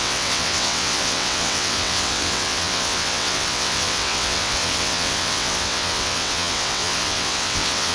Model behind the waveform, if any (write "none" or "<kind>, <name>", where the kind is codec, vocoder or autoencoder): vocoder, WaveNeXt